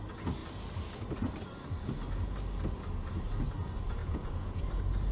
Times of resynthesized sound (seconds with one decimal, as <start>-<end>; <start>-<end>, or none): 4.0-4.6